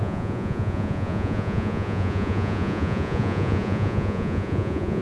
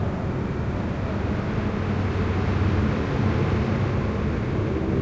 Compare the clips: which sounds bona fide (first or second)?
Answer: second